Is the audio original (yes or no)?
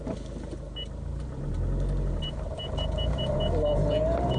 yes